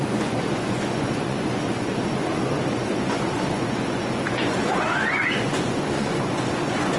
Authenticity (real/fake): fake